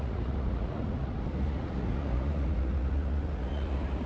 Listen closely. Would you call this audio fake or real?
fake